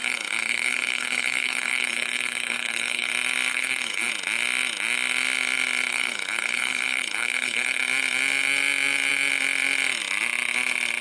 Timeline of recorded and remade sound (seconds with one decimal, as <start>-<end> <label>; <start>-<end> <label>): 0.0-3.1 remade; 3.1-3.5 recorded; 3.5-4.1 remade; 4.1-5.9 recorded; 5.9-7.8 remade; 7.8-11.0 recorded